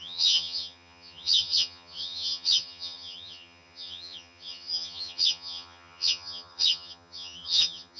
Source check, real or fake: fake